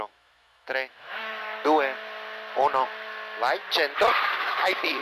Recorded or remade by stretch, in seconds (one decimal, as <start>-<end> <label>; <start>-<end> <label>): 0.0-1.4 remade; 1.4-4.4 recorded; 4.4-5.0 remade